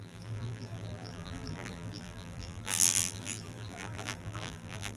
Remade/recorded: remade